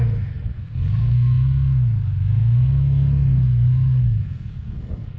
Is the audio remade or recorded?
remade